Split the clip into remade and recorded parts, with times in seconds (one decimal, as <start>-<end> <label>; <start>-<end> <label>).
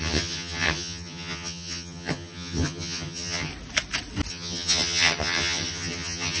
0.0-3.5 remade; 3.5-4.3 recorded; 4.3-6.4 remade